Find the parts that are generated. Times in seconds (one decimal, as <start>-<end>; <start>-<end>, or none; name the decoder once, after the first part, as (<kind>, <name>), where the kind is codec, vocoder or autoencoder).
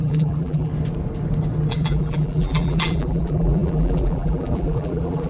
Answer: 0.0-0.7 (vocoder, BigVGAN v2); 1.7-5.3